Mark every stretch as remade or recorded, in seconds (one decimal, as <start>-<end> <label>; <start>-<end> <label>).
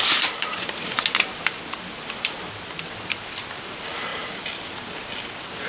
0.0-5.7 recorded